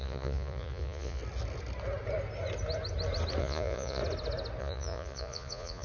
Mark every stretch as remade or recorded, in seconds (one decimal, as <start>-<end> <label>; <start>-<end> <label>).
0.0-1.2 remade; 1.2-3.4 recorded; 3.4-4.0 remade; 4.0-4.6 recorded; 4.6-5.8 remade